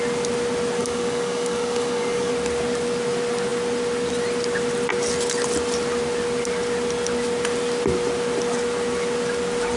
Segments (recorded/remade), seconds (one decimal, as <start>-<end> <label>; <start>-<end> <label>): 0.0-0.8 recorded; 0.8-2.3 remade; 2.3-9.8 recorded

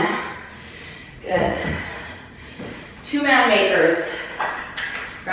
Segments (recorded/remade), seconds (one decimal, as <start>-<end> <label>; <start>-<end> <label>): 0.0-1.0 recorded; 1.0-3.2 remade; 3.2-3.9 recorded; 3.9-4.5 remade; 4.5-5.3 recorded